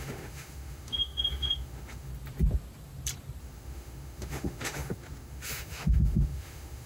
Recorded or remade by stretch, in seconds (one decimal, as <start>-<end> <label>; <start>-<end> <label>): 0.0-2.1 remade; 2.1-3.4 recorded; 3.4-6.9 remade